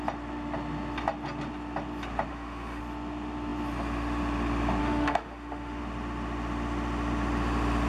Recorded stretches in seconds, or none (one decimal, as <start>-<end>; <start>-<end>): 0.0-2.3; 2.8-4.8; 5.8-7.9